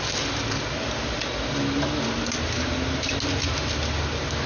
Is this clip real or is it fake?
real